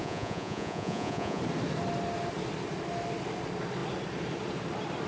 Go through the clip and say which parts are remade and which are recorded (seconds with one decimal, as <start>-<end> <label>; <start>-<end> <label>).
0.0-1.4 remade; 1.4-5.1 recorded